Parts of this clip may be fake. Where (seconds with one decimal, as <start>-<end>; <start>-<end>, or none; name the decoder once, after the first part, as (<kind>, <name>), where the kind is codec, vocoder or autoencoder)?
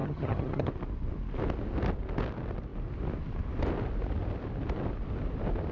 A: 0.0-0.7 (vocoder, HiFi-GAN)